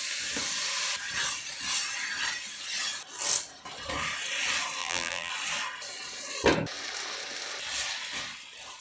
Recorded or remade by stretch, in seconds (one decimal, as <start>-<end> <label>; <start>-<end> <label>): 0.0-4.8 recorded; 4.8-5.3 remade; 5.3-8.8 recorded